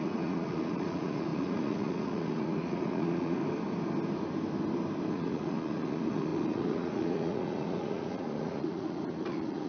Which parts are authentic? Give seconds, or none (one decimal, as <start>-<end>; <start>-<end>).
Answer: 3.4-5.1